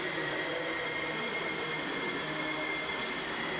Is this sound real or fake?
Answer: real